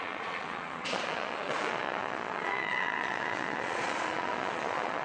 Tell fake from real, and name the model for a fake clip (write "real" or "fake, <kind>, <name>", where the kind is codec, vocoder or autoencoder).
fake, vocoder, Vocos